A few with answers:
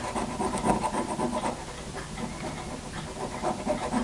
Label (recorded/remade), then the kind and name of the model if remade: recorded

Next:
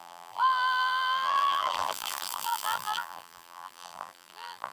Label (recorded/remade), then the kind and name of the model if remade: remade, vocoder, BigVGAN v2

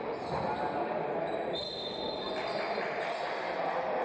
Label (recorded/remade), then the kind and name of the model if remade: recorded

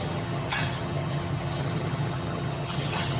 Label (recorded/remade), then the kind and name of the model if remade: remade, vocoder, HiFi-GAN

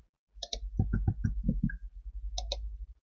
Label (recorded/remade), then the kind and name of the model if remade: recorded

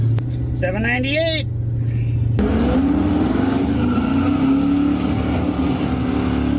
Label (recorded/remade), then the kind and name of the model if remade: recorded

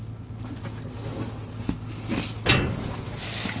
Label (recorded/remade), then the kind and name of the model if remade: recorded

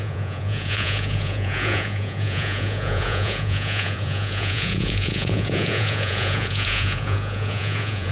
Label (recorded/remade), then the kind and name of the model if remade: remade, vocoder, Vocos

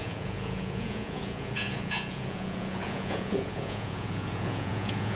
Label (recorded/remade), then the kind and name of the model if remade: remade, vocoder, Vocos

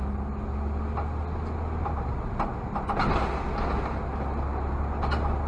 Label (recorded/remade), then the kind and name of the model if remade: recorded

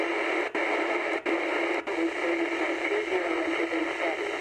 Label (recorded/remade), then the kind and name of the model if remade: recorded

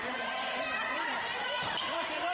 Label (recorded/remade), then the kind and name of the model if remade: remade, vocoder, BigVGAN v2